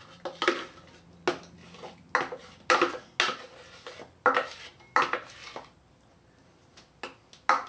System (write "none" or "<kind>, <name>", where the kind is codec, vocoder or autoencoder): none